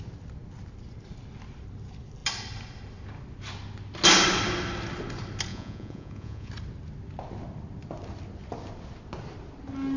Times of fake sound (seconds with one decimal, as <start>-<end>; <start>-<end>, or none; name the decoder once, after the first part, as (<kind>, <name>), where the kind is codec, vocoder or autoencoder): 5.5-6.5 (vocoder, Vocos)